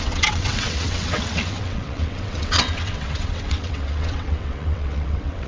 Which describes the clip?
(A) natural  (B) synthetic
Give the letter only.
B